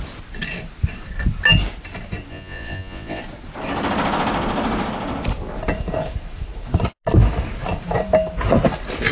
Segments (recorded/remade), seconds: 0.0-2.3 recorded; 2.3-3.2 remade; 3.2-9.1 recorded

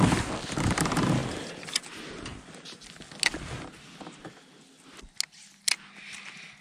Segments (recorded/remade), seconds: 0.0-6.6 recorded

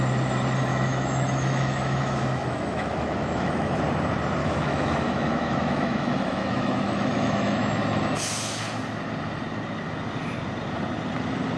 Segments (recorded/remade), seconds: 0.0-0.7 recorded; 0.7-3.8 remade; 3.8-4.4 recorded; 4.4-7.7 remade; 7.7-11.6 recorded

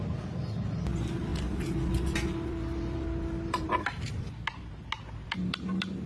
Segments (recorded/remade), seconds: 0.0-6.1 recorded